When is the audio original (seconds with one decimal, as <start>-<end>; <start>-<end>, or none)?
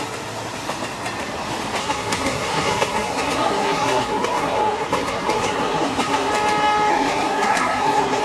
0.0-1.8; 6.3-6.9